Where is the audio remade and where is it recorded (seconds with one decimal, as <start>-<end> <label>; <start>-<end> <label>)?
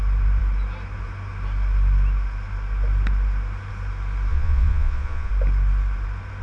0.0-4.3 recorded; 4.3-5.3 remade; 5.3-6.4 recorded